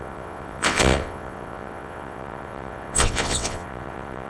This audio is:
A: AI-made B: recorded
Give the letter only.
A